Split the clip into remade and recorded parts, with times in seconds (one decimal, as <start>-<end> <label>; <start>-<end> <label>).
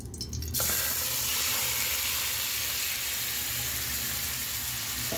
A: 0.0-5.2 recorded